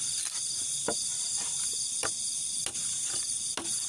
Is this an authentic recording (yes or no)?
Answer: yes